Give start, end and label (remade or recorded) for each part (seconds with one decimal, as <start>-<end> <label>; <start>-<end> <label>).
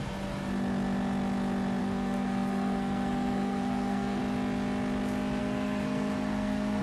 0.0-1.8 recorded; 1.8-4.2 remade; 4.2-5.4 recorded; 5.4-6.8 remade